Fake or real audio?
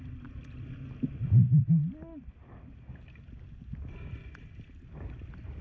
real